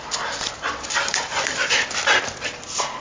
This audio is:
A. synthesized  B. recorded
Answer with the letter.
B